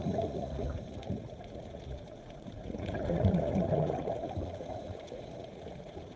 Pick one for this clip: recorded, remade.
remade